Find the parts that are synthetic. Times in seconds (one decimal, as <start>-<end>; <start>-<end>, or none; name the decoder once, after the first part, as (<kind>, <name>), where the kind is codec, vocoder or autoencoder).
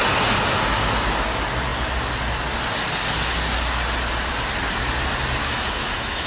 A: 5.4-6.3 (autoencoder, DAC-VAE)